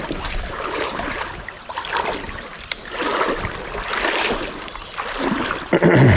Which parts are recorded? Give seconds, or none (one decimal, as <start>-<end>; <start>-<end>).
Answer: 0.0-6.2